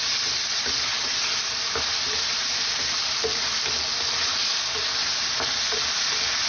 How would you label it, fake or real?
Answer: real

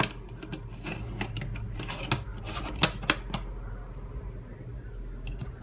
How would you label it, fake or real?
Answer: real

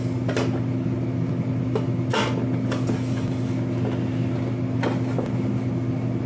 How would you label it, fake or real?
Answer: real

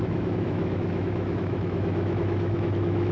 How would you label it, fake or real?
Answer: fake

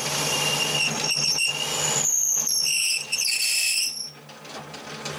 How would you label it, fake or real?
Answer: real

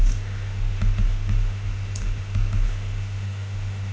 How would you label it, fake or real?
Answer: fake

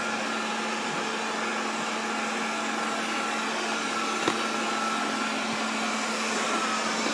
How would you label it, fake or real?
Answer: real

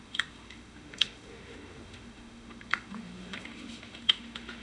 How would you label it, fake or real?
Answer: fake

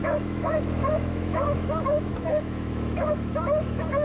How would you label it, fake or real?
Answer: fake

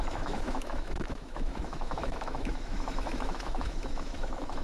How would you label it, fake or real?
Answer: fake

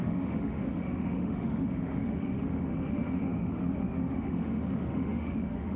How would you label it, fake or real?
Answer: fake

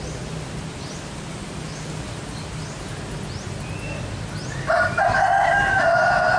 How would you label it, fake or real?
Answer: real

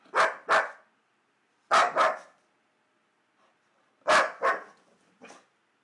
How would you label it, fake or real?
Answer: real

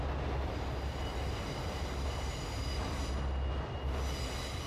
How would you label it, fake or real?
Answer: real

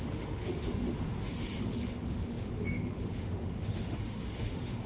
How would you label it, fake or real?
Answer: fake